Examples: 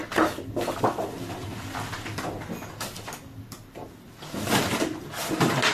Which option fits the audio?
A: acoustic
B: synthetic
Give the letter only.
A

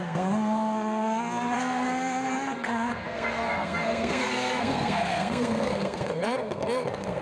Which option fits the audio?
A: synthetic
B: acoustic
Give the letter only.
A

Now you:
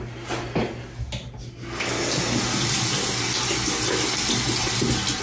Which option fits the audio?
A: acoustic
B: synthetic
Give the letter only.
A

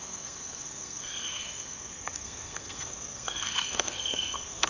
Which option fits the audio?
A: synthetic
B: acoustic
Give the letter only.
A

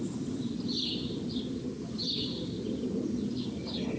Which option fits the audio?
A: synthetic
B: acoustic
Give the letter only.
B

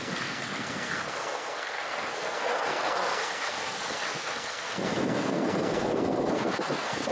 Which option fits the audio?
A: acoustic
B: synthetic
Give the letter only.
B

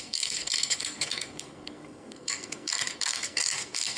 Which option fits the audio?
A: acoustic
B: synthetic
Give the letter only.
B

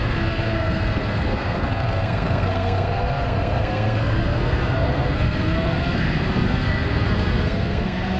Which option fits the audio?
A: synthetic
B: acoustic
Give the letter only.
A